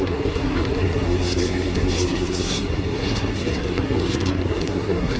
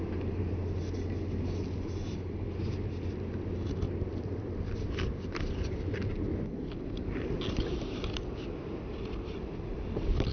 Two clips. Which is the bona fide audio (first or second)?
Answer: second